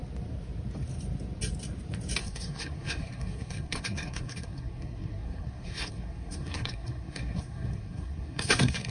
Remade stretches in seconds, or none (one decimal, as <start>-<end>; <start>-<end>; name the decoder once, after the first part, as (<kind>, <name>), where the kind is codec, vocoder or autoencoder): 2.2-8.9 (codec, SNAC)